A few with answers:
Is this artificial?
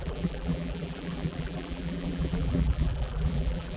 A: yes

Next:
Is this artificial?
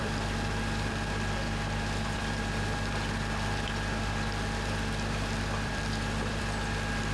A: yes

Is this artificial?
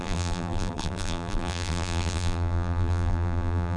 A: yes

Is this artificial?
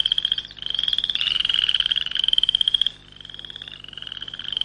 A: yes